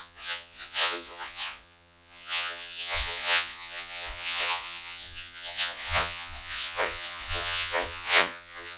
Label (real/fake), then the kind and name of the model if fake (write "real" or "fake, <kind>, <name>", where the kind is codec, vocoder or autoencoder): fake, vocoder, Vocos